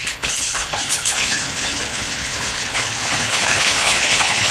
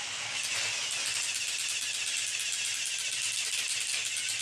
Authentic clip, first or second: second